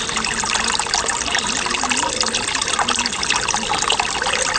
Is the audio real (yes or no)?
yes